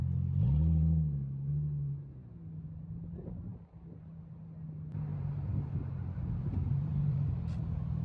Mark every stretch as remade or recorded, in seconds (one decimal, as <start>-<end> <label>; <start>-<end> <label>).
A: 0.0-5.1 recorded; 5.1-7.3 remade; 7.3-8.0 recorded